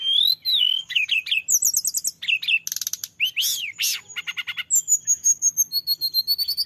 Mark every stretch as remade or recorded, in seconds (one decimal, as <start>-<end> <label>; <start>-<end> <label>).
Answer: 0.0-0.5 recorded; 0.5-1.1 remade; 1.1-4.9 recorded; 4.9-5.5 remade; 5.5-6.7 recorded

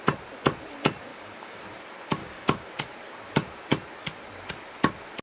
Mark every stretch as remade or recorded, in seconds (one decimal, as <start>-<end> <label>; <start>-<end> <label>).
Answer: 0.0-1.1 recorded; 1.1-1.6 remade; 1.6-2.2 recorded; 2.2-2.7 remade; 2.7-5.2 recorded

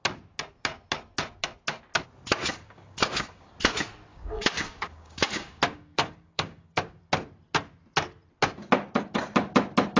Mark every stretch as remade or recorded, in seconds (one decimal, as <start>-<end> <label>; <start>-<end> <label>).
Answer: 0.0-2.5 recorded; 2.5-3.5 remade; 3.5-4.1 recorded; 4.1-7.0 remade; 7.0-10.0 recorded

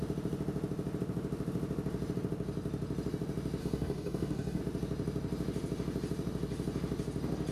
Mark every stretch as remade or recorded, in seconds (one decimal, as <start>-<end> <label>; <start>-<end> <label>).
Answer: 0.0-3.6 recorded; 3.6-4.6 remade; 4.6-7.5 recorded

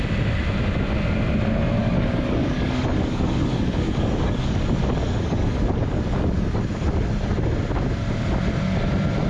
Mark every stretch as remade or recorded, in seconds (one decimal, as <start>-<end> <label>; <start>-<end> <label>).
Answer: 0.0-1.8 recorded; 1.8-6.6 remade; 6.6-9.3 recorded